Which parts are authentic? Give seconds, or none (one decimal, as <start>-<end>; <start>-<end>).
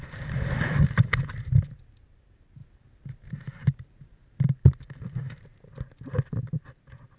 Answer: 0.0-7.2